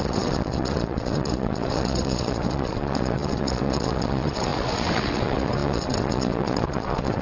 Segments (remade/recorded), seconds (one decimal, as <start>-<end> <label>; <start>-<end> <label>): 0.0-7.2 remade